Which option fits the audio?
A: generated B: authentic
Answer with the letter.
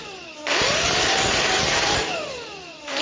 A